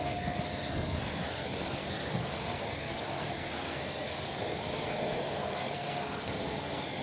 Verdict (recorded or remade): remade